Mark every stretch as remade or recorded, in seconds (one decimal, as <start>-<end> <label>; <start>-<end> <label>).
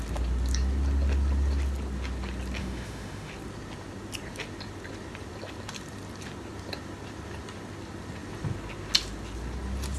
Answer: 0.0-2.6 recorded; 2.6-3.3 remade; 3.3-10.0 recorded